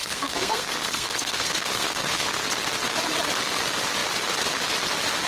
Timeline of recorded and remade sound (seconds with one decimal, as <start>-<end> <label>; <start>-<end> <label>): 0.0-2.4 remade; 2.4-5.3 recorded